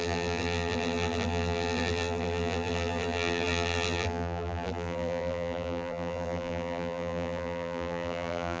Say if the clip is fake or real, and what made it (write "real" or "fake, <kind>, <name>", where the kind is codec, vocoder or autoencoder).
fake, vocoder, BigVGAN v2